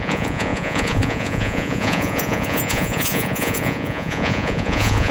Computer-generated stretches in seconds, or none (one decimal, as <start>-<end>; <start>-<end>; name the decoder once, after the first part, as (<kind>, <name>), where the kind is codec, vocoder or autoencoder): 0.0-5.1 (vocoder, Vocos)